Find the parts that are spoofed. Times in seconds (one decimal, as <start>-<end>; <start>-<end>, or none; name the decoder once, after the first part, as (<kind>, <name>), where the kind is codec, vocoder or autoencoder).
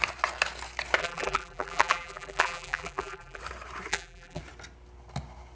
1.0-3.4 (vocoder, BigVGAN v2); 3.9-4.4